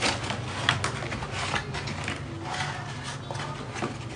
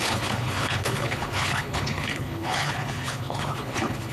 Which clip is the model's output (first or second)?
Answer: second